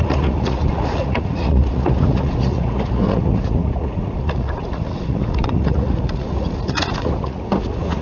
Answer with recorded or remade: remade